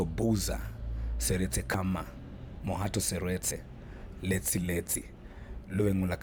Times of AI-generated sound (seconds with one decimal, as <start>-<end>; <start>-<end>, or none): 4.0-5.8